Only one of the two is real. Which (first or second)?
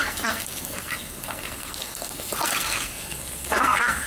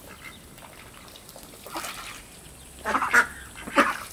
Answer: second